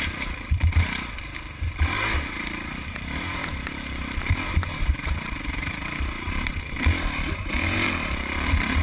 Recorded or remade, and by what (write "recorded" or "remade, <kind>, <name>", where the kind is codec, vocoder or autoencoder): remade, vocoder, BigVGAN v2